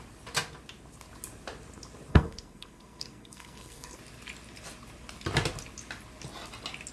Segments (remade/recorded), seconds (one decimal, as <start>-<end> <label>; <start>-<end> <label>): 0.0-2.1 recorded; 2.1-4.0 remade; 4.0-6.9 recorded